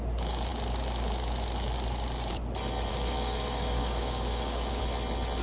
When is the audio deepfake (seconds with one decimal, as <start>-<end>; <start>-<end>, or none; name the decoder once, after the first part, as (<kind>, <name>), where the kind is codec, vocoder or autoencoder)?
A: 2.9-4.8 (codec, DAC)